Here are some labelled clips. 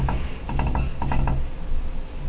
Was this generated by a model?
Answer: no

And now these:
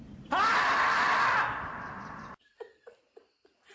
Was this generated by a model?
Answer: yes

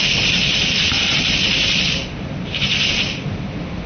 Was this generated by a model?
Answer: no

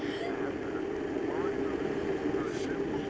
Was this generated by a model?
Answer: no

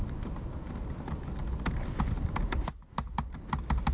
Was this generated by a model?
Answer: no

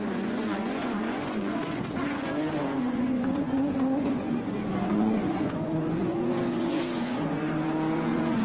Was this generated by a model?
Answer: yes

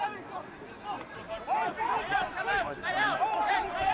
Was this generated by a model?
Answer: yes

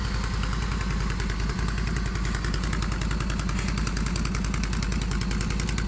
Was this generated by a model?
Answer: no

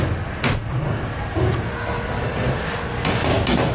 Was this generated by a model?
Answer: no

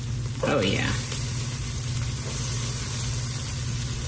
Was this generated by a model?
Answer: no